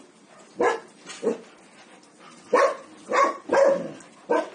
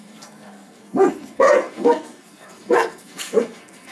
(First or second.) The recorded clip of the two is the first